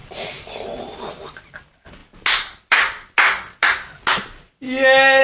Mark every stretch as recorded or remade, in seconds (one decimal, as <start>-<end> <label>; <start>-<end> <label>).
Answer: 0.0-1.2 remade; 1.2-5.2 recorded